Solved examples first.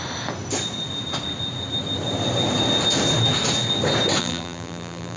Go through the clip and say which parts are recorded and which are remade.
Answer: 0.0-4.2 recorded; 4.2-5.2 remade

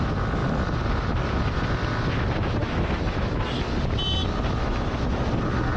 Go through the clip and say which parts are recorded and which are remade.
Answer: 0.0-2.6 recorded; 2.6-3.4 remade; 3.4-4.6 recorded; 4.6-5.2 remade; 5.2-5.8 recorded

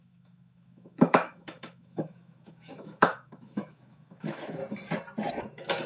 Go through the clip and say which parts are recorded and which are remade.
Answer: 0.0-4.6 remade; 4.6-5.3 recorded; 5.3-5.9 remade